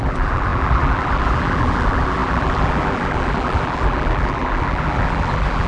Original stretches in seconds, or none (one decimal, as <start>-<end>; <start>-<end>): none